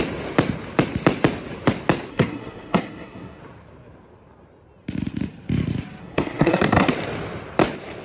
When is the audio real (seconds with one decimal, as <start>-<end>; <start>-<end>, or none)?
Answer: 0.0-2.1; 3.4-6.0; 6.9-8.0